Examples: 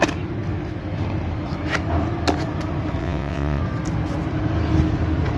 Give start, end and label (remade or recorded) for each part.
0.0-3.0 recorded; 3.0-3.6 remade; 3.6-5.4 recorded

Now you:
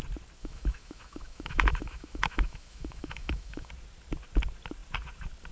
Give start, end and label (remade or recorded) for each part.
0.0-0.4 recorded; 0.4-3.7 remade; 3.7-5.5 recorded